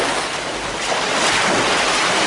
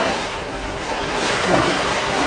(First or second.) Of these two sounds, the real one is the first